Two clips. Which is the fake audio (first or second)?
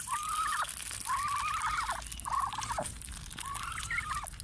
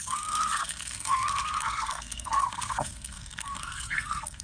second